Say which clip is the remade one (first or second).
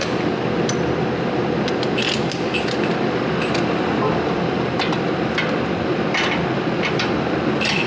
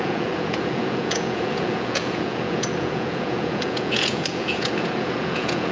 second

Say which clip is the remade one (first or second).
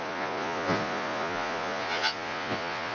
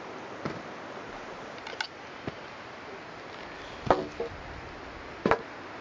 first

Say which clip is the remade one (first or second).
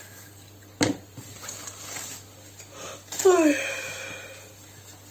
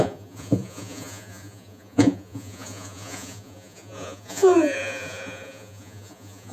second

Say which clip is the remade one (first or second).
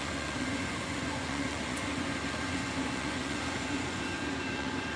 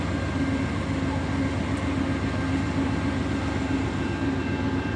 first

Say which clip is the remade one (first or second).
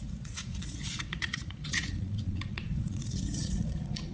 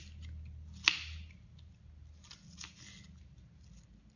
first